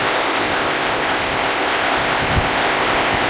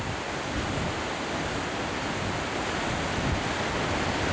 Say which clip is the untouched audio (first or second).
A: second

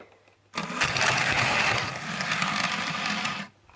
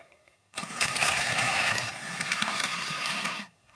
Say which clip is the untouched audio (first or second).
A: first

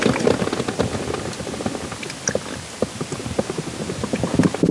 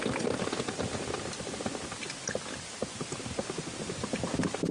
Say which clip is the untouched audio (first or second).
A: first